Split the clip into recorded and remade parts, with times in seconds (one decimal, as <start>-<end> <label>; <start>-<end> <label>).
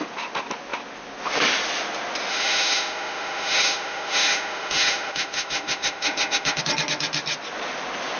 0.0-2.3 recorded; 2.3-6.6 remade; 6.6-8.2 recorded